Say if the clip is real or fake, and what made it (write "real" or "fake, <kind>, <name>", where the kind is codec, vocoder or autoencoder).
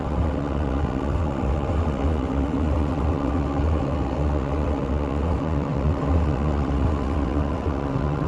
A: fake, vocoder, WaveNeXt